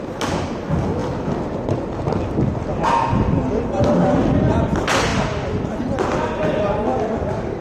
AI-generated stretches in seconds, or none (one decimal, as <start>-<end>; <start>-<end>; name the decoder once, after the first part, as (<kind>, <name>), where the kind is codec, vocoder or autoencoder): none